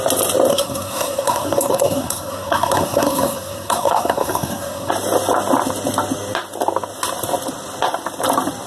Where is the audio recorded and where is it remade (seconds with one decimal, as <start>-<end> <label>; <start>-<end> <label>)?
0.0-0.5 recorded; 0.5-4.9 remade; 4.9-8.7 recorded